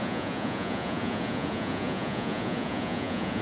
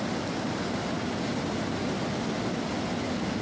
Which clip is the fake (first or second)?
first